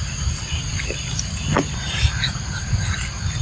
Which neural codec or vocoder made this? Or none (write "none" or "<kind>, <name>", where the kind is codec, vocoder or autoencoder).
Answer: none